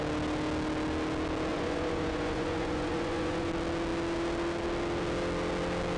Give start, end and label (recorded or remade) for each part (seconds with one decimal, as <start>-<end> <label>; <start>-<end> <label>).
0.0-1.5 recorded; 1.5-3.5 remade; 3.5-6.0 recorded